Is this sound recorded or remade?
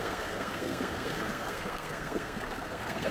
remade